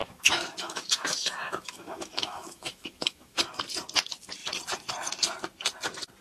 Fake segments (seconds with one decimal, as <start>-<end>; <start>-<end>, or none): 0.0-3.4